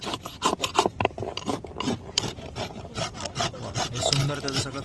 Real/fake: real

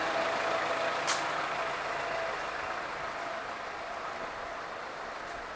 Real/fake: real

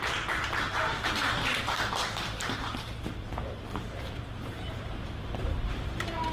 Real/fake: fake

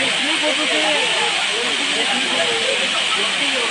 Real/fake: real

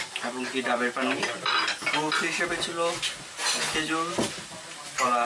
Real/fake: real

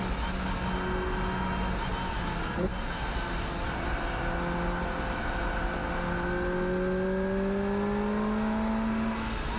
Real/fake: real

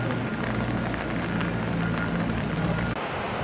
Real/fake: real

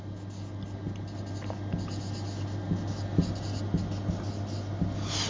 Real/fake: real